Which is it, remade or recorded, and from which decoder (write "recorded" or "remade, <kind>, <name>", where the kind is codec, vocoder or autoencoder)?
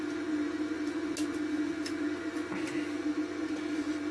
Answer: recorded